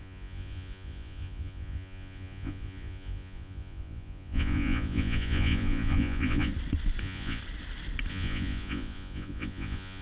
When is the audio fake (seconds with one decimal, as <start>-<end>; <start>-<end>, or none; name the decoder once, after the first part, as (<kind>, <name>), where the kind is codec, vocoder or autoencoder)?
0.0-6.5 (vocoder, Vocos); 7.0-7.4; 8.1-10.0